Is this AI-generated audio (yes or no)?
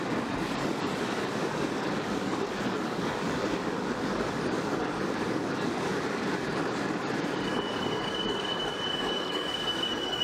yes